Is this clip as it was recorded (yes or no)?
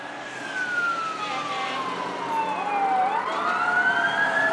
yes